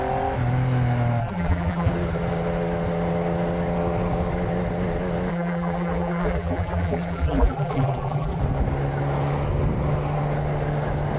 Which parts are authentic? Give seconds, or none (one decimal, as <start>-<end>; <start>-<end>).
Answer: 0.0-1.2; 1.9-5.3; 8.4-11.2